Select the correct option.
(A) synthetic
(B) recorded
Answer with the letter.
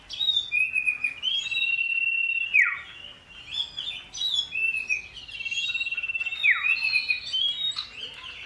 B